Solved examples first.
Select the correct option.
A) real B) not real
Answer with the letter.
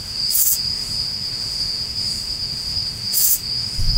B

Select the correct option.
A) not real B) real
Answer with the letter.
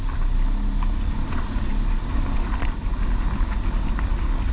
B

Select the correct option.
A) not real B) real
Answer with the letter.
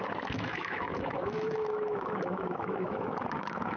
A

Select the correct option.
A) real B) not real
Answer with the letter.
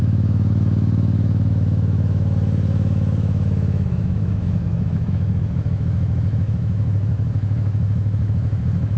B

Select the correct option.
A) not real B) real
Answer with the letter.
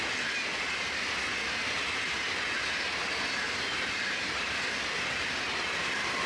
B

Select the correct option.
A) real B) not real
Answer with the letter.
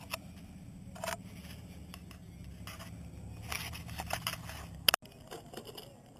A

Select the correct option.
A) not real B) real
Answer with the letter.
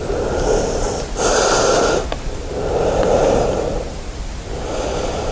B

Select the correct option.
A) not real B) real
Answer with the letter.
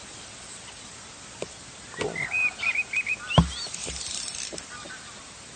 B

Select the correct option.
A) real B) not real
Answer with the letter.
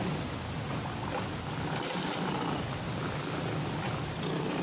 A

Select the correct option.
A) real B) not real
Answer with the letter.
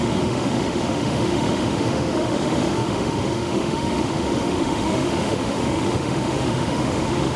B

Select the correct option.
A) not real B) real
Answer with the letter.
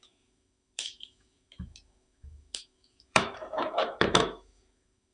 A